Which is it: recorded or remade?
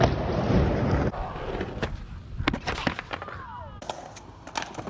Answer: recorded